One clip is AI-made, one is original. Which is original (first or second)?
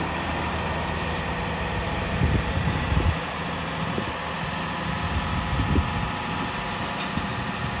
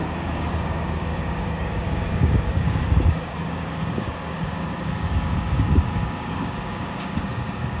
first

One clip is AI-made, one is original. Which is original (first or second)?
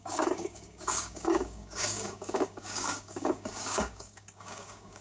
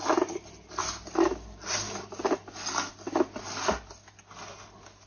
second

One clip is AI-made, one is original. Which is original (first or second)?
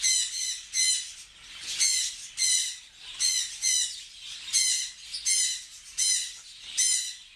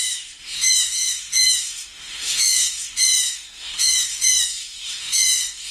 first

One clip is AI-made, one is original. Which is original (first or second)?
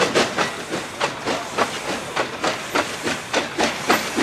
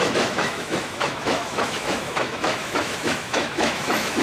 first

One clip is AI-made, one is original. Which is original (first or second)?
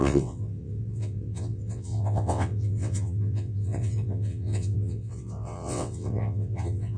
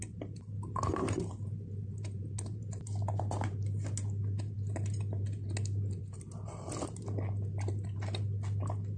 second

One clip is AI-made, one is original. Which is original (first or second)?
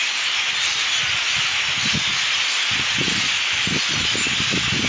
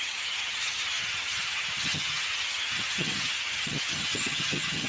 first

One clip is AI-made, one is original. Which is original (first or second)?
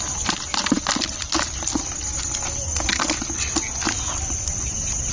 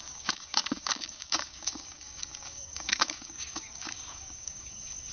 first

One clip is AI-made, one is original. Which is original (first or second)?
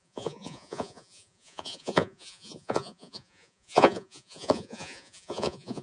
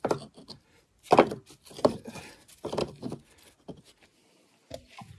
second